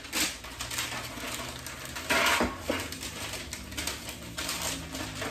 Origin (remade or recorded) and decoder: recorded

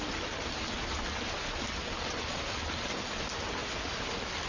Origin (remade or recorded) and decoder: recorded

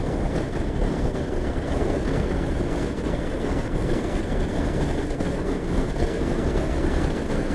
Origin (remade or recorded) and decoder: remade, codec, SNAC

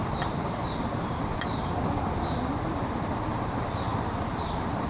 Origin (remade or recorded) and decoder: recorded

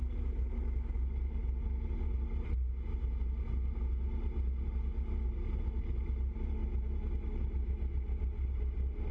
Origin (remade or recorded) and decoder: recorded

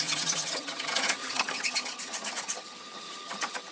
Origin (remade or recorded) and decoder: remade, vocoder, HiFi-GAN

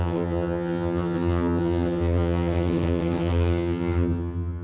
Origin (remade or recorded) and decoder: remade, vocoder, HiFi-GAN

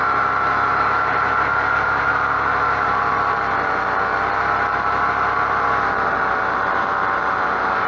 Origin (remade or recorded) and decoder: remade, vocoder, BigVGAN v2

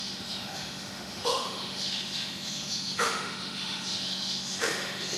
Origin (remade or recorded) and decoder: remade, autoencoder, DAC-VAE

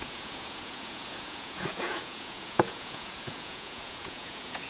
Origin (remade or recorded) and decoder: remade, vocoder, Vocos